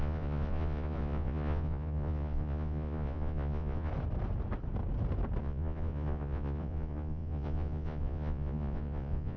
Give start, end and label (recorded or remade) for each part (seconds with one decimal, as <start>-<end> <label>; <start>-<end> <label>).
0.0-3.9 remade; 3.9-5.4 recorded; 5.4-9.4 remade